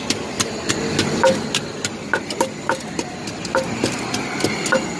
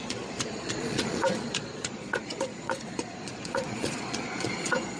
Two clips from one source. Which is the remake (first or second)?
second